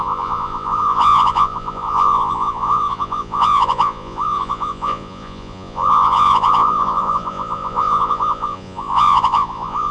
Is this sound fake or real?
fake